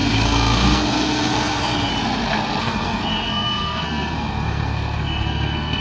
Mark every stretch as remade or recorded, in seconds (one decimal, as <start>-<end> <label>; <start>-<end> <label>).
0.0-1.9 remade; 1.9-2.6 recorded; 2.6-5.8 remade